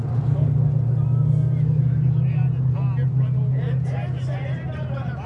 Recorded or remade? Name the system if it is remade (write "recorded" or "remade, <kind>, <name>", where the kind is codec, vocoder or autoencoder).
recorded